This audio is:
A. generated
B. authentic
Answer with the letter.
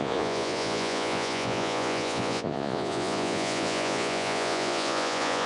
A